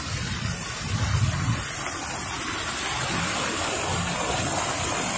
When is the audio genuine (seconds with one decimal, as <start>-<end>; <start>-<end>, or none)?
0.0-5.2